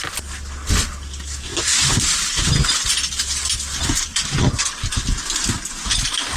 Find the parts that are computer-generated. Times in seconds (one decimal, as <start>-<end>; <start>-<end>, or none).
1.5-2.9; 4.1-4.9